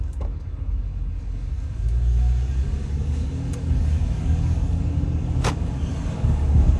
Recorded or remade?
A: remade